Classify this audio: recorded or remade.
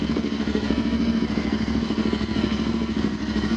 remade